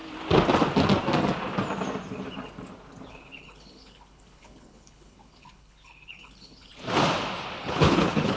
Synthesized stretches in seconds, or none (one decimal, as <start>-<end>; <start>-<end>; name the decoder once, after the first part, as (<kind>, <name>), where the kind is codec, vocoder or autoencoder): 3.1-6.7 (codec, HILCodec); 7.6-8.4